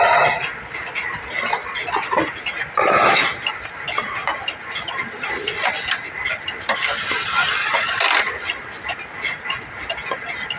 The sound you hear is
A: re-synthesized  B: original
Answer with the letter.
B